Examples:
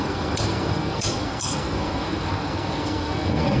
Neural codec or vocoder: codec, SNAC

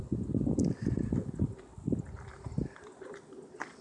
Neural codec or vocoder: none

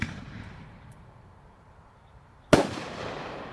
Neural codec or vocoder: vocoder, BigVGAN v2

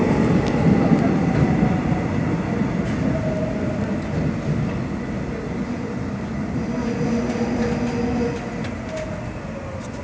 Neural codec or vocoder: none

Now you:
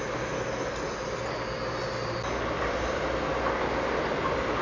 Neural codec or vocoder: none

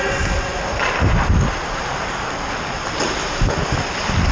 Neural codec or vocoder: none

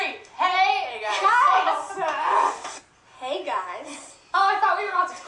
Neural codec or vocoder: none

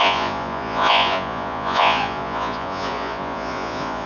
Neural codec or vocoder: vocoder, Vocos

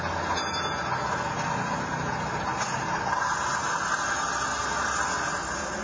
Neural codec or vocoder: none